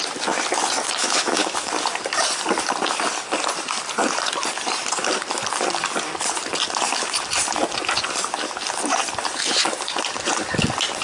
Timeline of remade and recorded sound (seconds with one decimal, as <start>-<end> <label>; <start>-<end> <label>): 0.0-1.0 recorded; 1.0-1.7 remade; 1.7-11.0 recorded